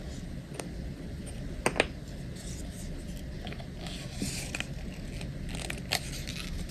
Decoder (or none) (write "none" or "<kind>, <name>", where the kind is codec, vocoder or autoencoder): none